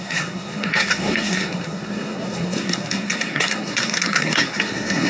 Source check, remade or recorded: remade